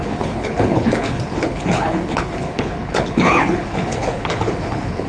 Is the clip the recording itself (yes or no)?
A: no